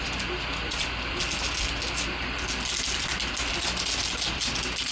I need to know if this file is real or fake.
real